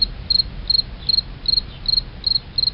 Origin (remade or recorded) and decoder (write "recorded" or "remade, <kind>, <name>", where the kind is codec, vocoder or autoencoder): recorded